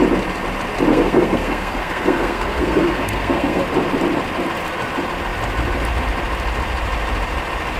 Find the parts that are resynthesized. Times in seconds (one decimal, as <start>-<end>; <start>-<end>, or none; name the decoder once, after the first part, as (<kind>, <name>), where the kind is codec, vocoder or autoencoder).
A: 0.9-3.6 (codec, SNAC)